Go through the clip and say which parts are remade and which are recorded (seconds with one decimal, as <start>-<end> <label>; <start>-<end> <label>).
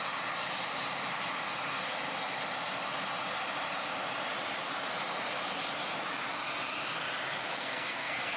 0.0-7.5 recorded; 7.5-8.4 remade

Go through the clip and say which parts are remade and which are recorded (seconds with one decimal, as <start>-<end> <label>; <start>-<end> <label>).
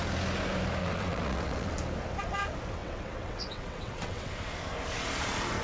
0.0-0.8 recorded; 0.8-1.7 remade; 1.7-2.8 recorded; 2.8-4.3 remade; 4.3-5.6 recorded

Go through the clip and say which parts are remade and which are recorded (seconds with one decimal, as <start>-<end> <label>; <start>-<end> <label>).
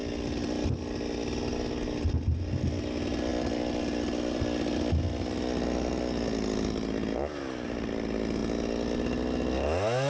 0.0-10.1 recorded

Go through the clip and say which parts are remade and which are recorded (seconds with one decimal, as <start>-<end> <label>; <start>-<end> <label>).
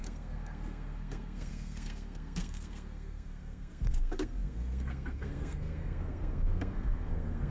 0.0-7.5 remade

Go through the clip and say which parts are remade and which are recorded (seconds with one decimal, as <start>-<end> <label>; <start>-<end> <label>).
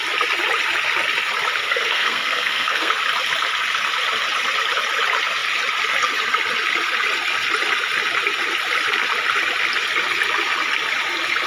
0.0-1.6 recorded; 1.6-2.9 remade; 2.9-11.5 recorded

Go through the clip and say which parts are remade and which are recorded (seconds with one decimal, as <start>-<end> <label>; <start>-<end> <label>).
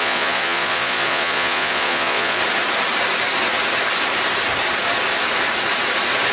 0.0-2.4 remade; 2.4-6.3 recorded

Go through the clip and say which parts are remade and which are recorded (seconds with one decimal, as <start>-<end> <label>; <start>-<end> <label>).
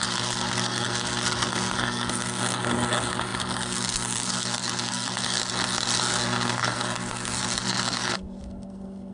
0.0-5.4 remade; 5.4-6.0 recorded; 6.0-9.1 remade